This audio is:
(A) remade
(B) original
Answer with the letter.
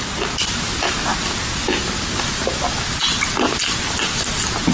B